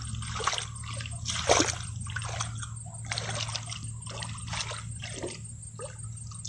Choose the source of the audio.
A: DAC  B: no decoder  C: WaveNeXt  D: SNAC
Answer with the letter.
B